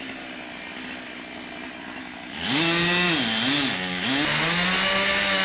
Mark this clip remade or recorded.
recorded